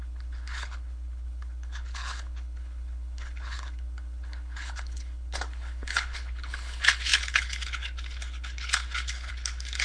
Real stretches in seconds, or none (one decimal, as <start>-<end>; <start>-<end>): none